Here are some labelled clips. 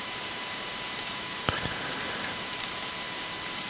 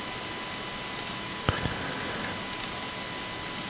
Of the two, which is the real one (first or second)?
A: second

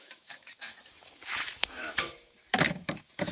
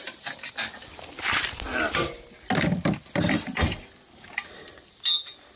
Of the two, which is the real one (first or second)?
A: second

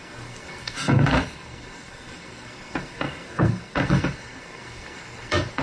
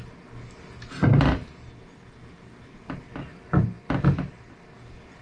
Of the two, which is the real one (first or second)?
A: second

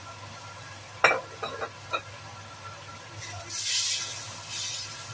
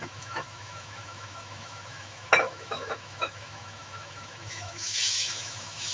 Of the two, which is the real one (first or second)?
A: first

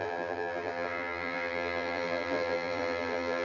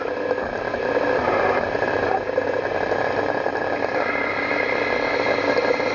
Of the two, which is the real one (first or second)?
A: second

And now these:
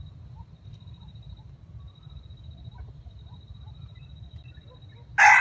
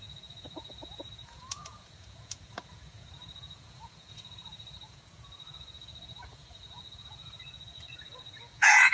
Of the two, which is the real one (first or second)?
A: first